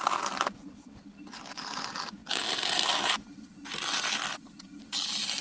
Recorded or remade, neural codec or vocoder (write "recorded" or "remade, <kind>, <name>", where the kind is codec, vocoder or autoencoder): recorded